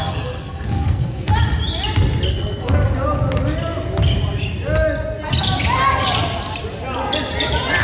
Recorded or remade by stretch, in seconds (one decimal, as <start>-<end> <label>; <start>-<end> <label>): 0.0-1.3 remade; 1.3-2.3 recorded; 2.3-2.8 remade; 2.8-7.8 recorded